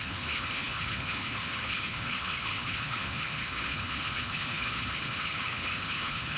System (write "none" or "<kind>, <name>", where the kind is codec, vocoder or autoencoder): codec, HILCodec